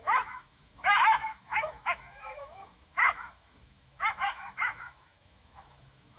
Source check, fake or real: fake